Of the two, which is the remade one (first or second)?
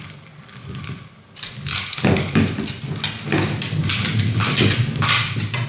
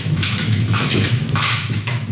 second